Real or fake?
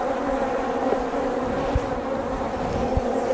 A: real